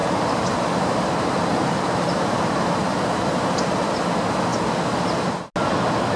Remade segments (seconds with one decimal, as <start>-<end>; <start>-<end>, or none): 0.0-3.7